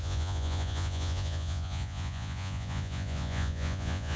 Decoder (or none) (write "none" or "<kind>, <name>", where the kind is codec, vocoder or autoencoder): vocoder, Vocos